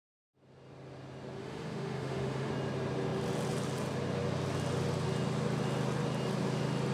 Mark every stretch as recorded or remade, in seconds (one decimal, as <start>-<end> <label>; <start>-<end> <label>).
0.0-1.4 recorded; 1.4-2.5 remade; 2.5-6.9 recorded